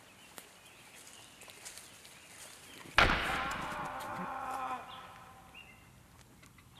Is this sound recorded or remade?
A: recorded